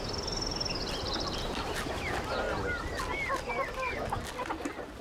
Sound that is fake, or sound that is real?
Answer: real